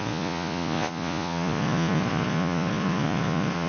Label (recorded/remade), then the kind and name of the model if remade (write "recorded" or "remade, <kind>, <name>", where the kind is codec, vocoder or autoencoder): remade, vocoder, Vocos